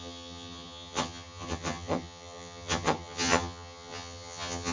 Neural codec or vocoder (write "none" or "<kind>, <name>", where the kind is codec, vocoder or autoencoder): vocoder, HiFi-GAN